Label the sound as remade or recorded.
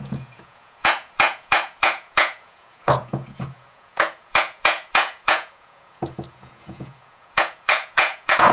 remade